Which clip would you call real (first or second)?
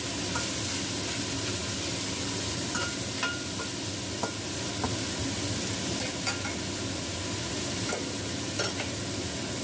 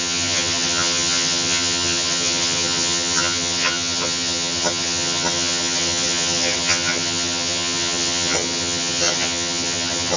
first